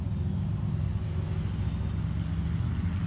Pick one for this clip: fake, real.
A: real